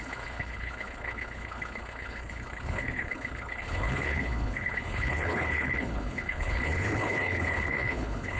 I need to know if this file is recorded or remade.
remade